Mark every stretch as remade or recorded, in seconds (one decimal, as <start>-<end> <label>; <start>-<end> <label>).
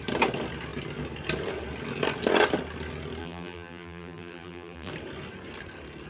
0.0-3.2 recorded; 3.2-4.9 remade; 4.9-6.1 recorded